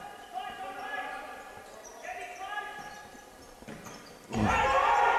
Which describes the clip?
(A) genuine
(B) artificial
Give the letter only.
A